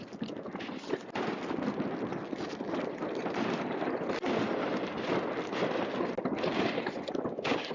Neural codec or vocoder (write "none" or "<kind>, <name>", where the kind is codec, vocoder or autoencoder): none